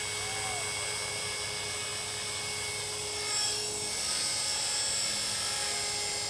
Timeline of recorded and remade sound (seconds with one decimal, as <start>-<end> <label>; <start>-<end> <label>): 0.0-6.3 recorded